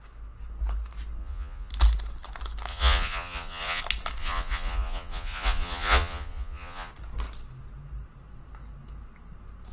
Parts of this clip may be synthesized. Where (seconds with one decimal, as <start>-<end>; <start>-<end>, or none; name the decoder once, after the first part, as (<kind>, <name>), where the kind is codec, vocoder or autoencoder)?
1.2-1.7 (vocoder, Vocos); 2.7-3.8; 4.2-6.9